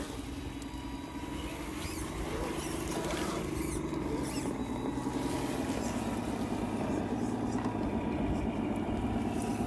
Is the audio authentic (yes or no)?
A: yes